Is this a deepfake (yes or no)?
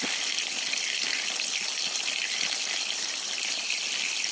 no